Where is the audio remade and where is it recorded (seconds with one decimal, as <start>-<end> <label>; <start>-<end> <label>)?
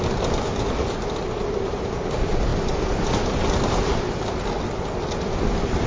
0.0-5.9 recorded